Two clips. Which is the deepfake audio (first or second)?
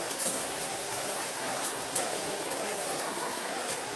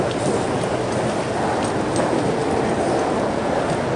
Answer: first